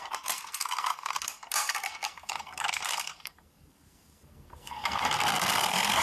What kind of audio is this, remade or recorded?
remade